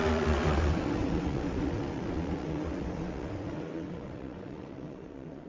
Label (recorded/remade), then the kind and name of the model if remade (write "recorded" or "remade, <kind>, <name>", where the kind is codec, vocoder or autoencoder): remade, vocoder, WaveNeXt